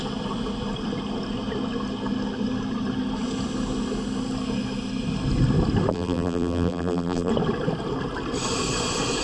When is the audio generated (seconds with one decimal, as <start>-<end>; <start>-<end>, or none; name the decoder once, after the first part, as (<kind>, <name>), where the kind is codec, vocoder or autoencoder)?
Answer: 5.9-7.3 (vocoder, BigVGAN v2)